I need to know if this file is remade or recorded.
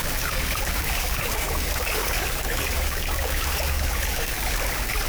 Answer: remade